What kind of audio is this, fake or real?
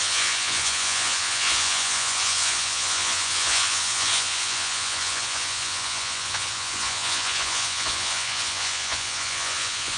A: fake